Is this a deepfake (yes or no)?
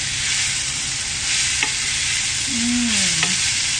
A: no